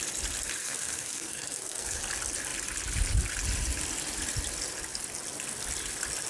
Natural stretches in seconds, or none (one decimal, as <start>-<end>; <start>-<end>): 0.0-0.6; 2.0-6.3